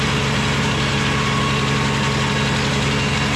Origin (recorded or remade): recorded